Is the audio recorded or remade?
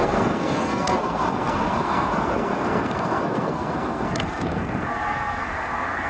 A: remade